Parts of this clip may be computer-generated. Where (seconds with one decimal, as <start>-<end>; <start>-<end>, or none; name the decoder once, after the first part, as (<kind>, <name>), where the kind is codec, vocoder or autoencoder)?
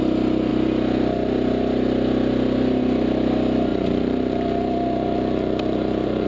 3.7-6.3 (vocoder, BigVGAN v2)